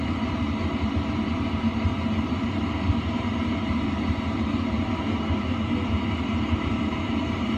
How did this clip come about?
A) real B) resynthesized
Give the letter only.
B